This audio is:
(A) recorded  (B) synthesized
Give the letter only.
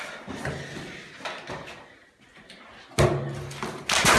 A